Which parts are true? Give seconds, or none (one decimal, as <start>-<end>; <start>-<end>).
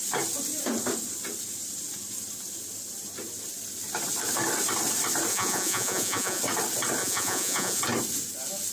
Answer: 0.0-5.3; 6.4-7.0; 7.8-8.7